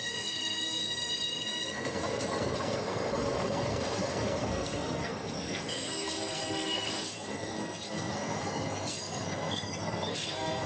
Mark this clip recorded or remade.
remade